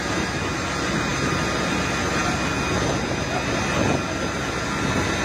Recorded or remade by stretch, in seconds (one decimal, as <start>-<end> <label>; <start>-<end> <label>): 0.0-5.2 recorded

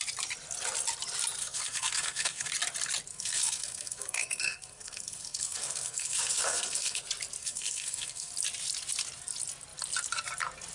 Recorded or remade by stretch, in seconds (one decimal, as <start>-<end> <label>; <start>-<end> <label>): 0.0-1.4 recorded; 1.4-2.5 remade; 2.5-3.1 recorded; 3.1-7.0 remade; 7.0-7.4 recorded; 7.4-8.3 remade; 8.3-10.7 recorded

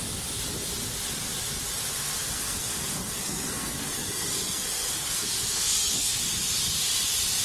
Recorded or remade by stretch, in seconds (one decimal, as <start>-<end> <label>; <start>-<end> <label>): 0.0-2.2 recorded; 2.2-6.2 remade; 6.2-7.4 recorded

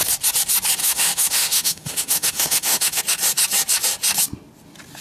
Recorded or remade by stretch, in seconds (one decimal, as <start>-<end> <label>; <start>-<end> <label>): 0.0-0.8 recorded; 0.8-3.0 remade; 3.0-5.0 recorded

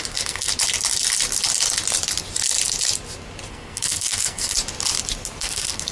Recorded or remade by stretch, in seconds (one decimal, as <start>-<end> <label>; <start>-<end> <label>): 0.0-0.5 remade; 0.5-3.5 recorded; 3.5-4.5 remade; 4.5-5.4 recorded; 5.4-5.9 remade